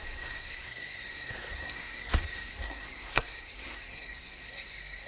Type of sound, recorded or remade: remade